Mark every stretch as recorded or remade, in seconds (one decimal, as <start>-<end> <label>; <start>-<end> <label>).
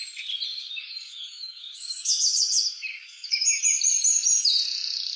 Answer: 0.0-0.5 recorded; 0.5-3.6 remade; 3.6-5.2 recorded